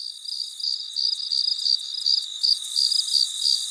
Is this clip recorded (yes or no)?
yes